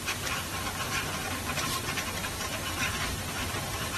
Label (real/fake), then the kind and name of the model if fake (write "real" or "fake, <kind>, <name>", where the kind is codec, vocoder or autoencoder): fake, vocoder, BigVGAN v2